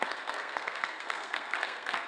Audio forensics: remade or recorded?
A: remade